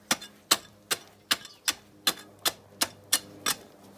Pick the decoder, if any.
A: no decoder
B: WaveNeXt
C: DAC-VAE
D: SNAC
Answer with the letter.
A